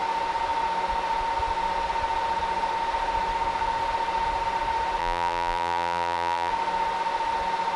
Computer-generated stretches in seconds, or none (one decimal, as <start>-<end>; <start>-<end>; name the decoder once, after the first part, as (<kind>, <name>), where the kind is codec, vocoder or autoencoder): 5.0-6.5 (vocoder, BigVGAN v2)